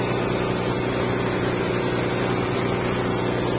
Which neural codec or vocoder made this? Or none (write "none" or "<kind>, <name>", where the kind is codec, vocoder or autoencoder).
none